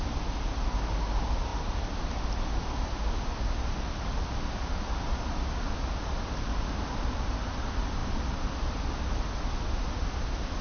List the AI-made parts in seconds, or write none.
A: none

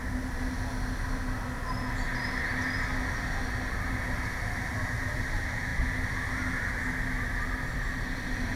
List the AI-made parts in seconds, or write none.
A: none

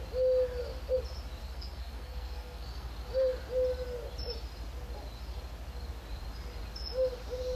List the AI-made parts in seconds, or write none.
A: 1.4-2.9 (codec, SNAC)

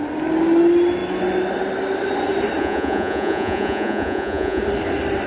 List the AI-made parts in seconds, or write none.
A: 2.6-4.6 (vocoder, Vocos)

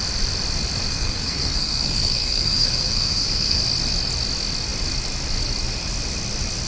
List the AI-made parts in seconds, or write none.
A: 0.9-3.6 (codec, SNAC)